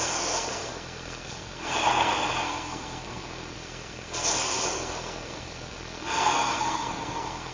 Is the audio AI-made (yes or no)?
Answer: yes